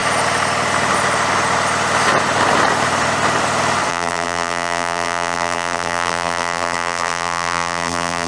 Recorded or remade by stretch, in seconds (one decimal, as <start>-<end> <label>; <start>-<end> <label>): 0.0-3.9 recorded; 3.9-8.3 remade